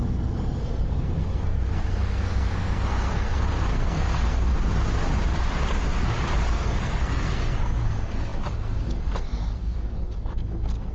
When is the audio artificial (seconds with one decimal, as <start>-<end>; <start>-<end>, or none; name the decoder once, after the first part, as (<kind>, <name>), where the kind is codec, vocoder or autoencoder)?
0.0-4.5 (codec, SNAC); 6.5-10.9